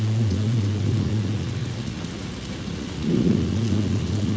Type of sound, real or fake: fake